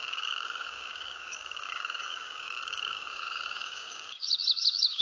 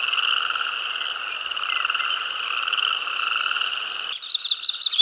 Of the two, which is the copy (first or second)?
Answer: first